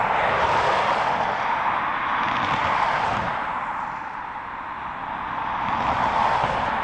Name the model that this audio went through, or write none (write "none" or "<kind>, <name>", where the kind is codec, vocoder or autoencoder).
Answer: none